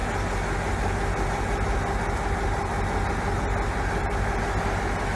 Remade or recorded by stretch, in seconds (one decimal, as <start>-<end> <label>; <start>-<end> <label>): 0.0-5.1 recorded